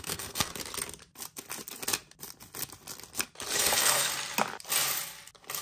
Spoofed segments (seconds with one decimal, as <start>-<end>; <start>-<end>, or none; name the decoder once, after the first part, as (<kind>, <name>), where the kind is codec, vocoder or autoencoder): 0.0-0.5 (codec, SNAC); 3.6-4.1